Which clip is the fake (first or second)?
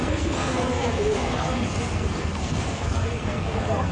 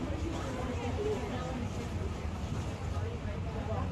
first